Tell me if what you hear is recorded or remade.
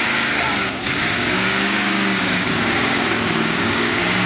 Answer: remade